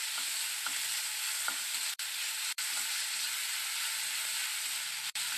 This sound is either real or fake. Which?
fake